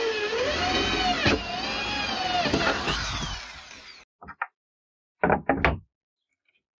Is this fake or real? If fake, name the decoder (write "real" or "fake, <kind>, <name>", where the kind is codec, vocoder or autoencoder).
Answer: real